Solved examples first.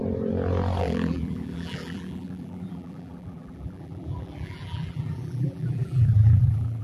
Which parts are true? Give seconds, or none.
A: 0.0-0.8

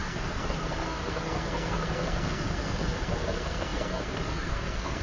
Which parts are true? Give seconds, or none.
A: none

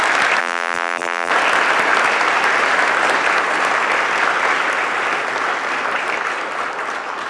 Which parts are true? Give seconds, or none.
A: 0.0-0.4; 1.3-7.3

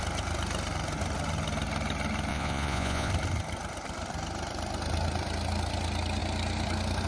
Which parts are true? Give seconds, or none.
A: 0.0-2.3; 3.1-7.1

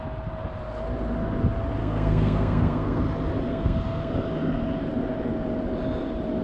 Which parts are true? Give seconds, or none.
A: 0.0-1.8; 3.0-3.5; 4.1-6.4

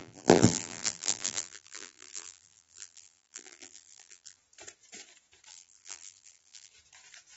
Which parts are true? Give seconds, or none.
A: 4.4-5.5; 6.7-7.4